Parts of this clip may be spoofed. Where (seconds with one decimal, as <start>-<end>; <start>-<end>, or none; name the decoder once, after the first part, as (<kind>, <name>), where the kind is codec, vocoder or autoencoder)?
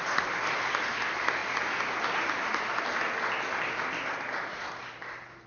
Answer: none